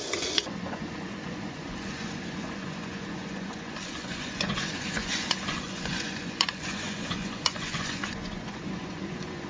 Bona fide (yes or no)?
no